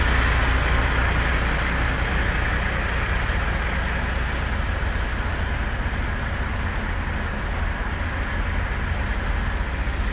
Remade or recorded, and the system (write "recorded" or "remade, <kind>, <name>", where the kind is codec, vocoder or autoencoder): recorded